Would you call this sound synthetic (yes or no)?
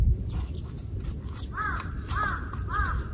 no